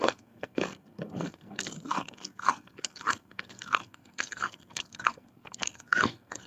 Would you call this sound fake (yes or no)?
yes